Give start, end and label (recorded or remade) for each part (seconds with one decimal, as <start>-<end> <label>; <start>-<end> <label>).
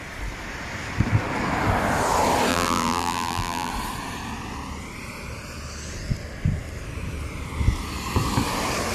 0.0-2.5 recorded; 2.5-3.7 remade; 3.7-8.9 recorded